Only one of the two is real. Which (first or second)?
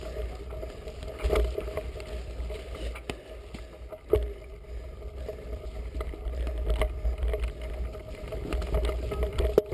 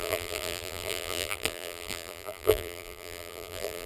first